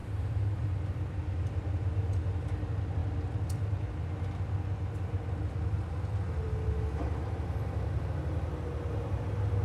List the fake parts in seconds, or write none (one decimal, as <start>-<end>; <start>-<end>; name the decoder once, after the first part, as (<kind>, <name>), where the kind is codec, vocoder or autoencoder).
0.0-0.7 (vocoder, BigVGAN v2)